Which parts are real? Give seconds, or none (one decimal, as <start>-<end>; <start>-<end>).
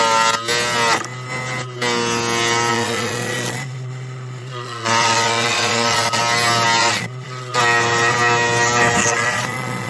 0.0-2.7; 6.2-6.8; 7.6-9.0